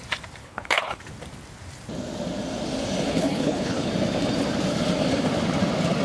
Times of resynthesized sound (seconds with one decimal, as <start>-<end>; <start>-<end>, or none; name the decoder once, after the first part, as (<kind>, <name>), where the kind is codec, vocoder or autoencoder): 0.4-1.0 (codec, HILCodec); 3.1-3.9